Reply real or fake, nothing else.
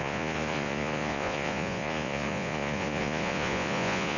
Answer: fake